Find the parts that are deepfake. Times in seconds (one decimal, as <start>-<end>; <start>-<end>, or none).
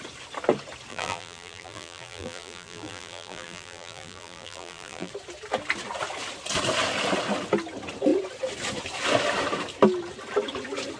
0.9-5.1